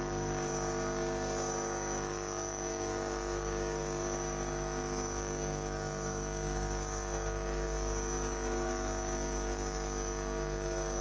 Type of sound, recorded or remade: remade